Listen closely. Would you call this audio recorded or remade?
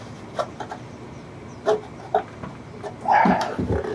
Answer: recorded